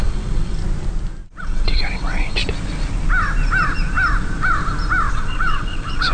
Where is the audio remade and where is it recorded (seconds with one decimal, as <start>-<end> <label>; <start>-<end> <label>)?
0.0-0.6 remade; 0.6-1.4 recorded; 1.4-2.4 remade; 2.4-5.1 recorded; 5.1-6.1 remade